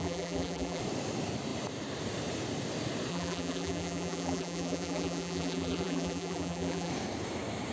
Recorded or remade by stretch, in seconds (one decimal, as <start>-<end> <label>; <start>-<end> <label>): 0.0-0.8 remade; 0.8-3.1 recorded; 3.1-6.9 remade; 6.9-7.7 recorded